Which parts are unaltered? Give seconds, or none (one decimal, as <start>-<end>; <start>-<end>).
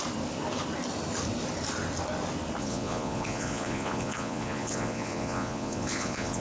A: 0.0-2.6